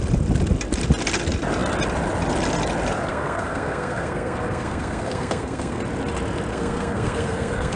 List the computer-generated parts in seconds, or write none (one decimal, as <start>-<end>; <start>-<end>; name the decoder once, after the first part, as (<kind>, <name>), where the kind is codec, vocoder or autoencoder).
3.1-5.8 (codec, SNAC); 6.5-7.8